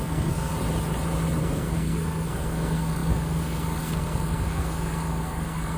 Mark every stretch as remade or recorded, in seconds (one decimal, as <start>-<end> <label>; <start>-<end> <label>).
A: 0.0-0.5 remade; 0.5-1.4 recorded; 1.4-5.8 remade